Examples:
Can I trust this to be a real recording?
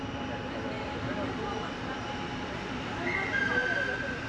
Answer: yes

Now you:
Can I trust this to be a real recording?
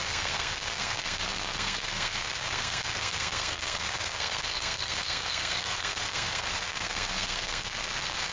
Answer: no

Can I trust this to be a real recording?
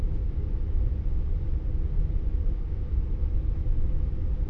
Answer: yes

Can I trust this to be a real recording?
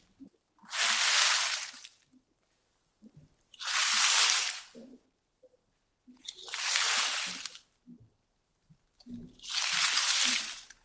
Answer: yes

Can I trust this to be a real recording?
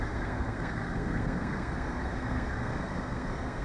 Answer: no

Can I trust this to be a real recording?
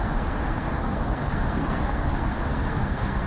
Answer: no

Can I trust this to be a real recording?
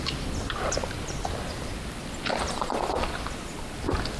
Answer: yes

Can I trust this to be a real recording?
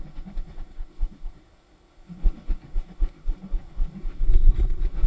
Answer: no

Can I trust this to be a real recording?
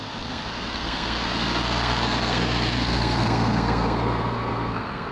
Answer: no